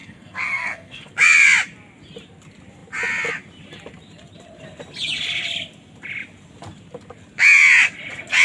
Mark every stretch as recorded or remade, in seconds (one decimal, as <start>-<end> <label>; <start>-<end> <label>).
0.0-1.1 remade; 1.1-8.4 recorded